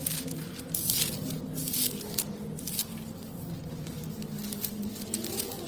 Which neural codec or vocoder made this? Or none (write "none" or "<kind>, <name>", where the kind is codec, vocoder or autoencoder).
none